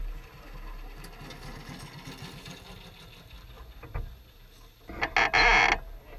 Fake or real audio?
real